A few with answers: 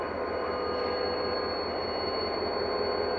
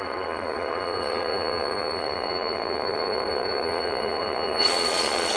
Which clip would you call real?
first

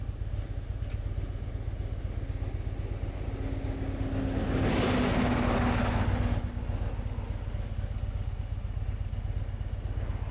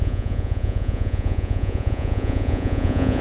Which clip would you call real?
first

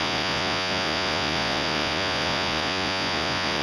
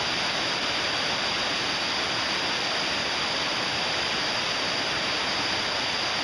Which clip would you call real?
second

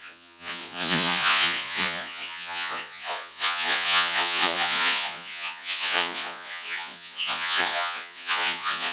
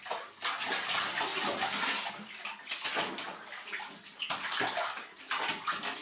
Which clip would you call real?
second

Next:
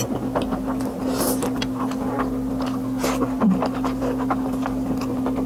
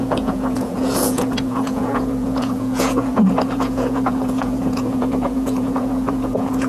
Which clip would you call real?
first